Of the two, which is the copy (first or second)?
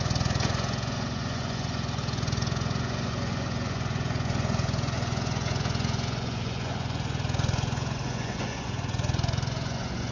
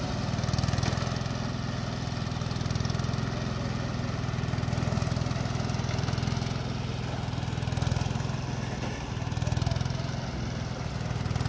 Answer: first